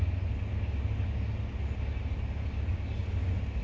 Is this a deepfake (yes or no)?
no